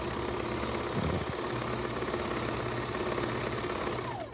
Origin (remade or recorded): recorded